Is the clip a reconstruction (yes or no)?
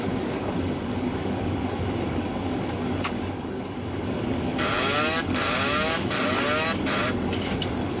yes